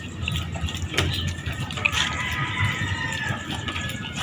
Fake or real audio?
real